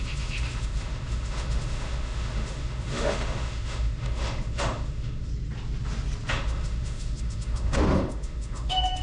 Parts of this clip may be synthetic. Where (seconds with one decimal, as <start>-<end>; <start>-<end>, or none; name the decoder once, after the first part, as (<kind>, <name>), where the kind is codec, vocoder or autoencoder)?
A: 0.0-5.3 (autoencoder, DAC-VAE); 6.3-9.0

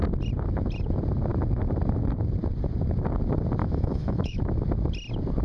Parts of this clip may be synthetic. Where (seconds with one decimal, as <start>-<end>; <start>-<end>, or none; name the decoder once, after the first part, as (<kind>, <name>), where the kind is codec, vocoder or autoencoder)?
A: 3.6-4.4 (autoencoder, DAC-VAE)

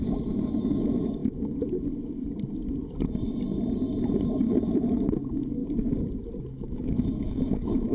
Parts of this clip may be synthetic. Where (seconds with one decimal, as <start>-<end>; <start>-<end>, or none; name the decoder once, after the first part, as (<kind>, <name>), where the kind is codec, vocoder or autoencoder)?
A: 0.0-1.2 (autoencoder, DAC-VAE); 4.6-5.6; 6.4-7.9

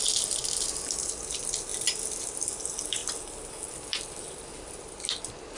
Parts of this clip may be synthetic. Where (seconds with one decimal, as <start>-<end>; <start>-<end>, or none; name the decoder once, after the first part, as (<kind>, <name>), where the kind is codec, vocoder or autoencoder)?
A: none